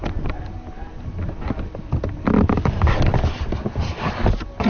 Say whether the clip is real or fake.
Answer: real